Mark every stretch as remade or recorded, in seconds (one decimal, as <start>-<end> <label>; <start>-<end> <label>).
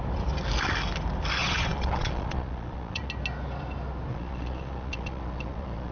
0.0-1.4 recorded; 1.4-3.1 remade; 3.1-4.1 recorded; 4.1-5.9 remade